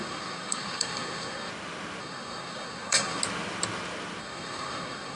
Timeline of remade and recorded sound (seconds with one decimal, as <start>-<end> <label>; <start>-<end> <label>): 0.0-1.5 remade; 1.5-2.0 recorded; 2.0-3.2 remade; 3.2-4.2 recorded; 4.2-5.2 remade